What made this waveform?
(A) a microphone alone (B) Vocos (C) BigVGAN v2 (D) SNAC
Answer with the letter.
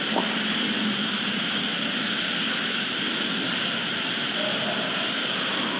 A